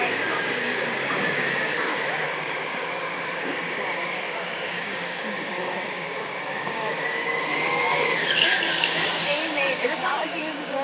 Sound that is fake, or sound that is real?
fake